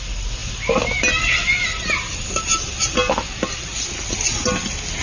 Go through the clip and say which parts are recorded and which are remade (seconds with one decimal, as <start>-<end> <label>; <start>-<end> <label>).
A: 0.0-5.0 recorded